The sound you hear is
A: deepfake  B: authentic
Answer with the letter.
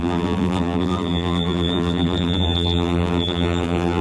A